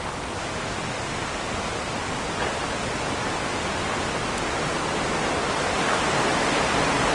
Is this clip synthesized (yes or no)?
no